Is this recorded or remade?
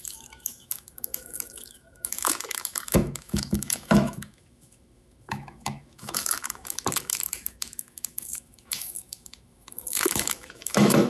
remade